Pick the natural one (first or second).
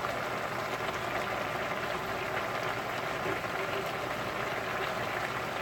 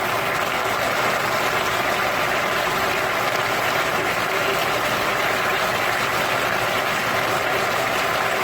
first